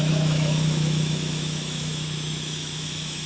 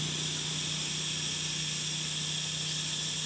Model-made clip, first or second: first